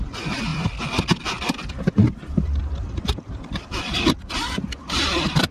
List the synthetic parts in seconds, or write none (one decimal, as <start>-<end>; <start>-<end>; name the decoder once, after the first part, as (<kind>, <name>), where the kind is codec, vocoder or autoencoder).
0.0-5.5 (vocoder, BigVGAN v2)